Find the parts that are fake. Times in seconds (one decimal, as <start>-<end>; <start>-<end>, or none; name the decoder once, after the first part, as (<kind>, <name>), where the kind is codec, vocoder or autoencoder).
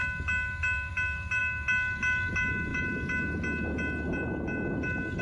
none